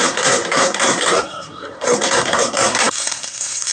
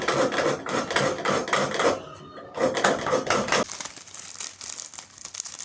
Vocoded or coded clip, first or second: first